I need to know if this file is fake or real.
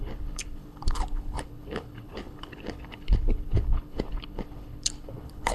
fake